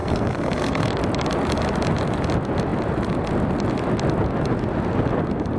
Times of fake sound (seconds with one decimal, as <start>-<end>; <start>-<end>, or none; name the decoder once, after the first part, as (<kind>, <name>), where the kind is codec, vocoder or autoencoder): 0.0-0.9 (codec, SNAC)